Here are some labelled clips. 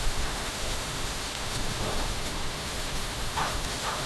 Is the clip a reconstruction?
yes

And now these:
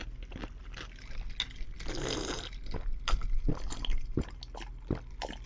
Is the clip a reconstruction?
no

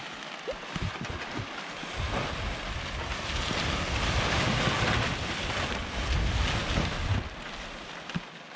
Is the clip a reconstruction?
no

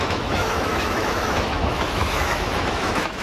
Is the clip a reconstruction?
yes